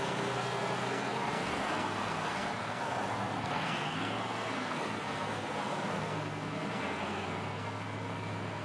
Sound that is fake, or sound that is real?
fake